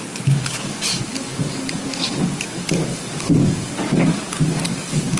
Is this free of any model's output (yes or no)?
no